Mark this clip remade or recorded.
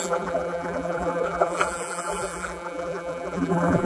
remade